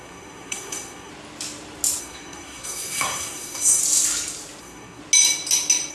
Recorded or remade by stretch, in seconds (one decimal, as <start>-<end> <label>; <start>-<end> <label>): 0.0-1.1 remade; 1.1-2.0 recorded; 2.0-3.8 remade; 3.8-4.6 recorded; 4.6-5.0 remade; 5.0-5.9 recorded